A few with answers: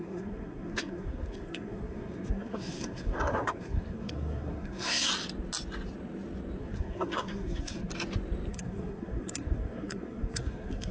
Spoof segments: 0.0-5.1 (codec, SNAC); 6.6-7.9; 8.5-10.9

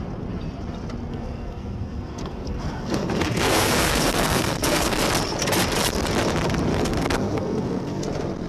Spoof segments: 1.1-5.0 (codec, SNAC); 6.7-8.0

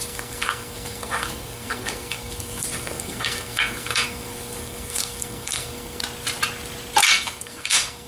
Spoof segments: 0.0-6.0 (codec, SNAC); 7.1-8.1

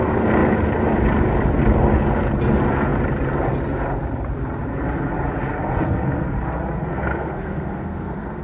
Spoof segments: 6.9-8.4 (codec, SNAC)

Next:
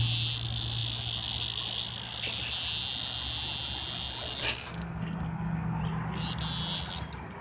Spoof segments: 4.5-5.8 (codec, SNAC)

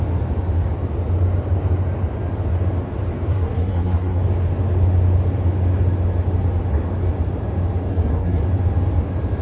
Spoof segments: 3.3-4.2 (codec, SNAC); 7.9-8.4

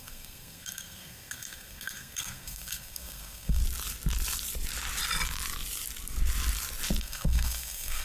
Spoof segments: 0.0-3.6 (codec, SNAC); 7.0-8.0